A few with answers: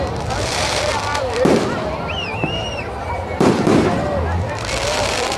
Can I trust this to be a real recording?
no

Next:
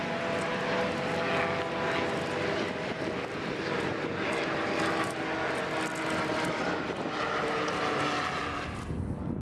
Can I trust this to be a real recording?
yes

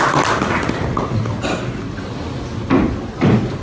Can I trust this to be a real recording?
yes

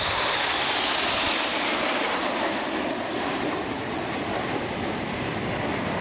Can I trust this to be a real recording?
no